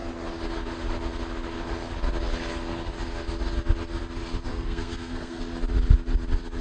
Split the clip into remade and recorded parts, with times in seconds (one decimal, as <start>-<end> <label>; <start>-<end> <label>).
0.0-4.5 recorded; 4.5-5.4 remade; 5.4-6.6 recorded